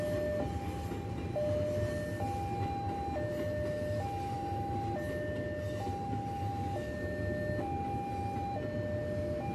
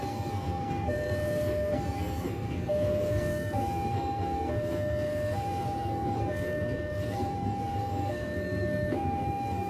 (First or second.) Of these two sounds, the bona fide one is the first